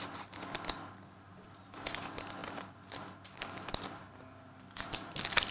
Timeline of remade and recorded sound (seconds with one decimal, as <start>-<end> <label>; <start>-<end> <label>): 0.0-5.5 recorded